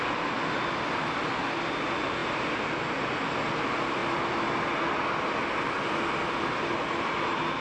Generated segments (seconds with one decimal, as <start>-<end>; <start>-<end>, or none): none